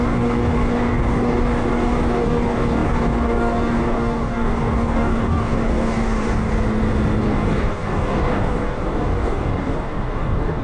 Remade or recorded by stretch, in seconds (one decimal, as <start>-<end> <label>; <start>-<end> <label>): 0.0-6.5 remade; 6.5-7.2 recorded; 7.2-10.6 remade